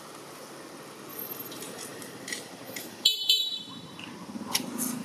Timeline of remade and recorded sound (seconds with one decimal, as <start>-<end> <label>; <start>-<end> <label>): 0.0-1.1 recorded; 1.1-3.5 remade; 3.5-5.0 recorded